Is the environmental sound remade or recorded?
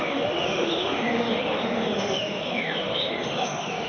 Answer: remade